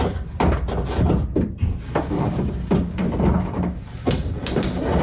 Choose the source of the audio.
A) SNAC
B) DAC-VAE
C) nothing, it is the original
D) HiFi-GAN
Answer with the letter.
C